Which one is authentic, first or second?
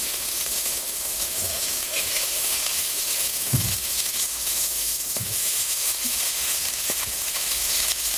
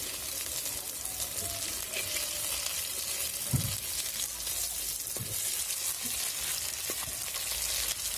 second